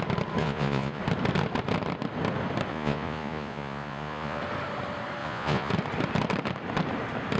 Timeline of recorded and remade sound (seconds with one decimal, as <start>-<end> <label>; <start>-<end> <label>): 0.0-0.4 recorded; 0.4-1.0 remade; 1.0-2.7 recorded; 2.7-4.4 remade; 4.4-5.2 recorded; 5.2-5.7 remade; 5.7-7.4 recorded